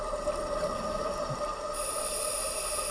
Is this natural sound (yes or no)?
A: yes